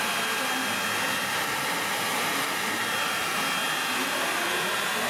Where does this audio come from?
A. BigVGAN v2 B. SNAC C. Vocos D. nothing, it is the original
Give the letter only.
D